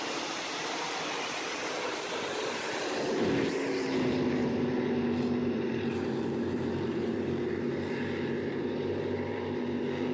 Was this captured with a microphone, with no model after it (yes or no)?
no